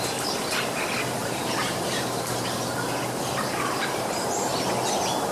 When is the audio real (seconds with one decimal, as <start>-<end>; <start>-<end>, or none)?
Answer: 0.0-1.2; 4.4-5.3

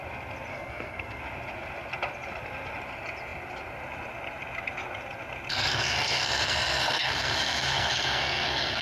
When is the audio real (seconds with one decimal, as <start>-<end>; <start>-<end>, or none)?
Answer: 0.0-0.5; 1.2-5.5